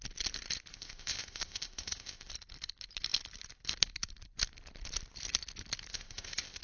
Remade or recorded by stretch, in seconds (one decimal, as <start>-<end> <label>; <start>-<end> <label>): 0.0-0.7 recorded; 0.7-2.3 remade; 2.3-5.9 recorded; 5.9-6.6 remade